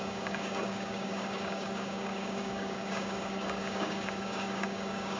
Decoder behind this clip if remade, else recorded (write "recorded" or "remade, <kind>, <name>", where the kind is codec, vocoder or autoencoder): remade, codec, DAC